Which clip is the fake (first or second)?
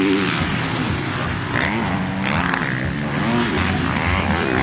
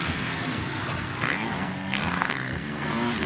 second